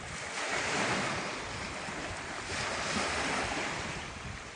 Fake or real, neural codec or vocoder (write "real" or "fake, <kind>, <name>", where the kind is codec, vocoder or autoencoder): real